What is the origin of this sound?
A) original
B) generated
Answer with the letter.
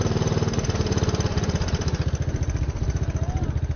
B